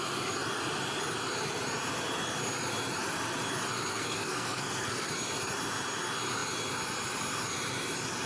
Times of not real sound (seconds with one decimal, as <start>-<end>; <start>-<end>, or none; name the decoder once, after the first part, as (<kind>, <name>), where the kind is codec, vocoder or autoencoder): 3.9-5.1 (codec, SNAC)